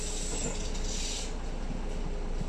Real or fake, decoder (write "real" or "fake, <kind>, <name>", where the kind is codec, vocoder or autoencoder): real